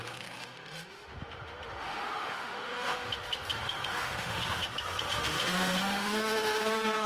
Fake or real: fake